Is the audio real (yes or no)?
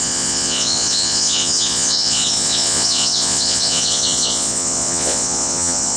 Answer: no